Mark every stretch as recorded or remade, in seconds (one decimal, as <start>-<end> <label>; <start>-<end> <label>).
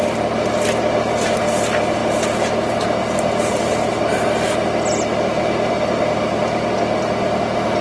0.0-7.8 recorded